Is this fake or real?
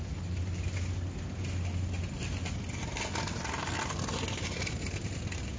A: real